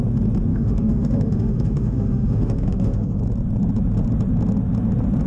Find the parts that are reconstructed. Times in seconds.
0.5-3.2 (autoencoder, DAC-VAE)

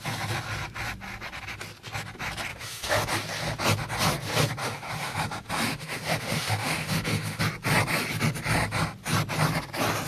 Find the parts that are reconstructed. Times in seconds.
2.5-3.1 (autoencoder, DAC-VAE); 4.6-7.4

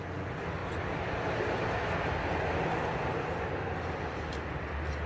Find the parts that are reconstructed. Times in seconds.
none

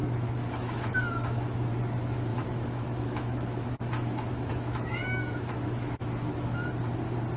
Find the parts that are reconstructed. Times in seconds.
0.0-1.7 (autoencoder, DAC-VAE); 2.3-6.7

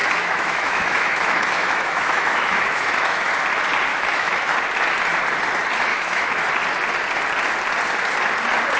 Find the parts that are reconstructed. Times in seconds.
0.0-3.3 (autoencoder, DAC-VAE); 3.9-4.5; 5.9-6.4

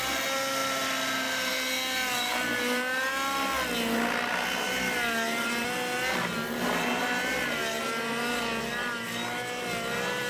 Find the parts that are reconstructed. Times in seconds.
none

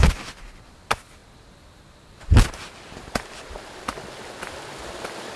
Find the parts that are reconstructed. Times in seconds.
none

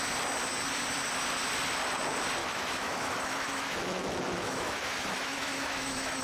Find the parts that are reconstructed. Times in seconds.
2.4-6.2 (autoencoder, DAC-VAE)